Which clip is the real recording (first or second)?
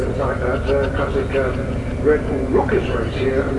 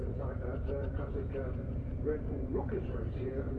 first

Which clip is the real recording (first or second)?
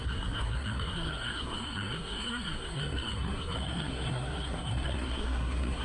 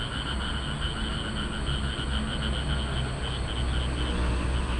second